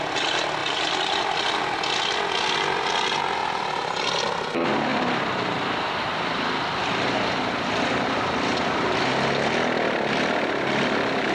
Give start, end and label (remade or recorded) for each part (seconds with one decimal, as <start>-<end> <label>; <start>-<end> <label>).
0.0-0.6 recorded; 0.6-1.6 remade; 1.6-3.4 recorded; 3.4-3.9 remade; 3.9-4.9 recorded; 4.9-9.1 remade; 9.1-11.3 recorded